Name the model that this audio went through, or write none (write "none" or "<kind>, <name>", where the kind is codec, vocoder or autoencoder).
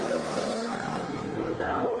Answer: codec, SNAC